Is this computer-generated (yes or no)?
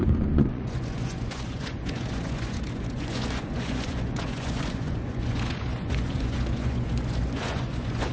yes